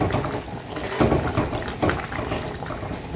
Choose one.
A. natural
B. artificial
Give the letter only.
A